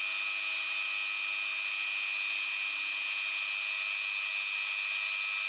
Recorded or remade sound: recorded